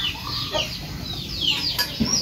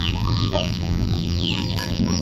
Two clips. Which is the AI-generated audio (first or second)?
second